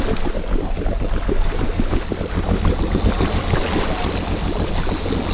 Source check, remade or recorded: recorded